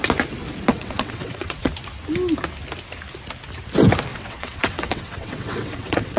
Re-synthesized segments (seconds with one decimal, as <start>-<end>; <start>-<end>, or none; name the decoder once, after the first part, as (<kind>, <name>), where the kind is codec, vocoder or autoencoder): 0.7-1.7 (vocoder, WaveNeXt); 4.1-6.2